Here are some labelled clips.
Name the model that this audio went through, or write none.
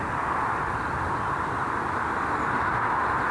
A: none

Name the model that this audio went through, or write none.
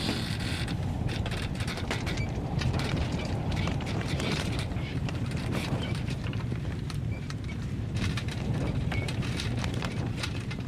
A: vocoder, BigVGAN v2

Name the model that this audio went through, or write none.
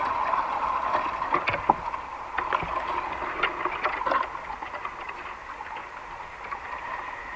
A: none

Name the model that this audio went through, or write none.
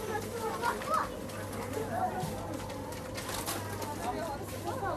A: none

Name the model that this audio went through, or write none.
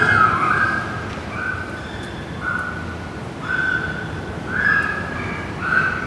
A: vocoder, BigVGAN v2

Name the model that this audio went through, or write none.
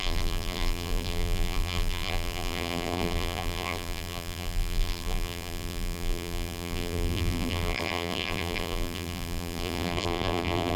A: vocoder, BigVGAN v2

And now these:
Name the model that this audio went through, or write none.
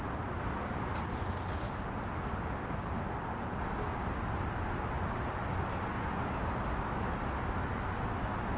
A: none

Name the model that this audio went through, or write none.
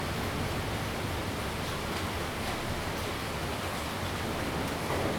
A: none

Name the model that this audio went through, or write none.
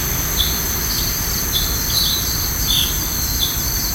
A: none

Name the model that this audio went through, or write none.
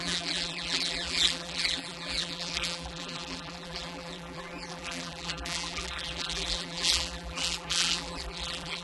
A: vocoder, BigVGAN v2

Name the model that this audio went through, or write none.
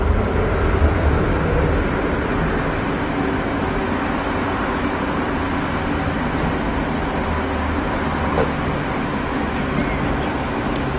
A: none